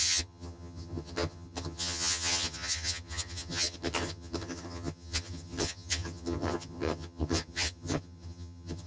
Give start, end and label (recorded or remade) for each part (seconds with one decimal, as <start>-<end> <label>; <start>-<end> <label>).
0.0-8.9 remade